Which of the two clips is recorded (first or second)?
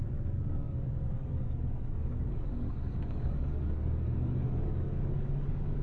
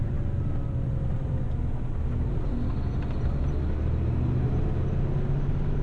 second